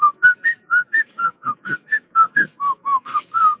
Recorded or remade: remade